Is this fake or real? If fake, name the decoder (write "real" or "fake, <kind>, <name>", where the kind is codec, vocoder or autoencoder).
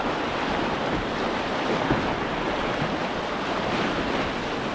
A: real